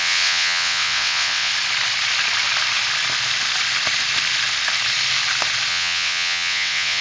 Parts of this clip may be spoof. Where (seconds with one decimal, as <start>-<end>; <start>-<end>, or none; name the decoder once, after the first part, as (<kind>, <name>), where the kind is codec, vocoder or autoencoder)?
0.0-1.5 (vocoder, WaveNeXt); 5.7-7.0